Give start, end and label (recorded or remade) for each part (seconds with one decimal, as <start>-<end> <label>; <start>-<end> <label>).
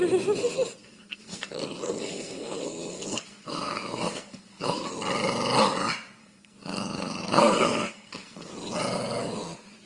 0.0-0.8 recorded; 0.8-4.9 remade; 4.9-6.2 recorded; 6.2-8.5 remade; 8.5-9.9 recorded